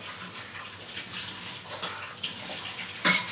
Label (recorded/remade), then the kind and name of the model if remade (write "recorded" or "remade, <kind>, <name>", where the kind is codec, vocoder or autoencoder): recorded